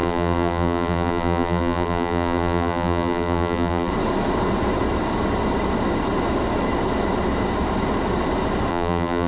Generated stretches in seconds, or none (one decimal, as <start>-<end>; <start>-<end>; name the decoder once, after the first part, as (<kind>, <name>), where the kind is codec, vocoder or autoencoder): 0.0-3.9 (vocoder, BigVGAN v2); 8.7-9.3